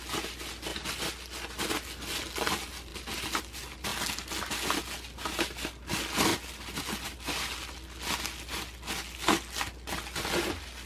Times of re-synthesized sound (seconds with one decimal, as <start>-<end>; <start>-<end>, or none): none